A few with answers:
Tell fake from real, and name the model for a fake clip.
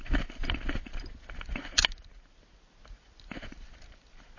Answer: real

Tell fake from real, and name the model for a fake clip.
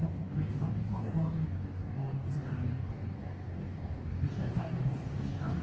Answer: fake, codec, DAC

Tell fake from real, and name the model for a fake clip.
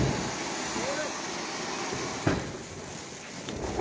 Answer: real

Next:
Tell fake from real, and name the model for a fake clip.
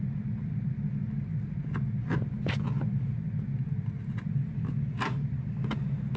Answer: real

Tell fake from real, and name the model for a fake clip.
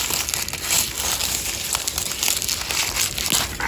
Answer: real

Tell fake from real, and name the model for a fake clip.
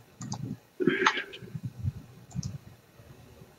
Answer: fake, codec, DAC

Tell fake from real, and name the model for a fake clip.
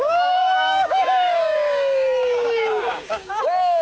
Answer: fake, codec, DAC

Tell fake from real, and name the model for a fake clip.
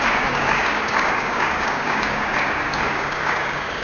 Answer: fake, codec, DAC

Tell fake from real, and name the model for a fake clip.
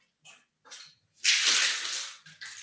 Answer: real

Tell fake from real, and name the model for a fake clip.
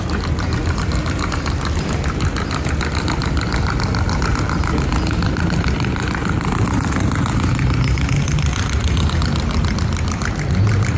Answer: real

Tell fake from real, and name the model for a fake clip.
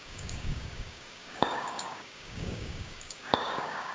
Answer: fake, codec, DAC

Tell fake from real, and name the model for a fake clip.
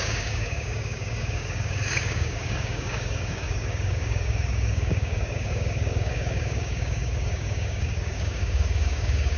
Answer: fake, codec, DAC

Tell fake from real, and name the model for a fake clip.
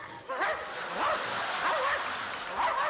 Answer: real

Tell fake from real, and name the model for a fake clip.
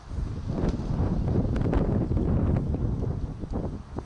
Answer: real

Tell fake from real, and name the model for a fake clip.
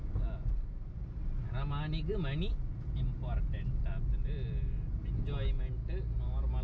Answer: real